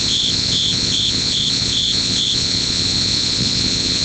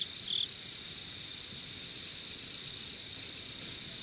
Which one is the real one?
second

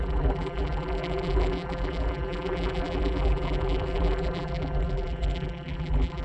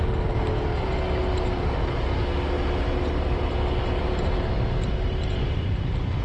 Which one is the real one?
second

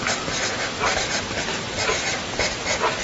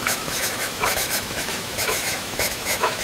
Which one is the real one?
first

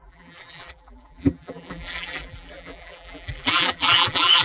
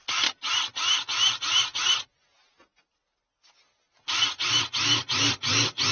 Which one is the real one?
second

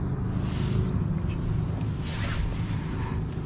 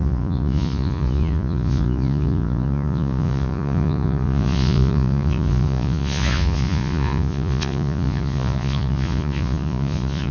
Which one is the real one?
first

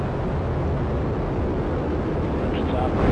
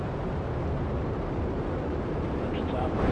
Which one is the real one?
first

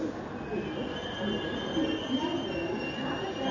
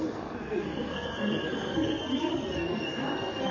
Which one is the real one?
first